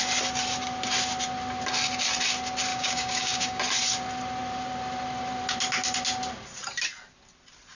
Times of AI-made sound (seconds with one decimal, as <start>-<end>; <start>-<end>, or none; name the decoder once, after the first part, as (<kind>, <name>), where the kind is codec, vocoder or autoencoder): 2.7-3.6 (codec, DAC)